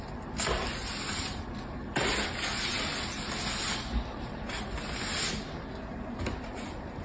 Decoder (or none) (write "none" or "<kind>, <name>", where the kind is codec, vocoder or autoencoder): none